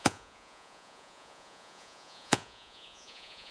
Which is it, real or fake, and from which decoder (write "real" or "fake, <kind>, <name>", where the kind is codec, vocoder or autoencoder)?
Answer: fake, vocoder, Vocos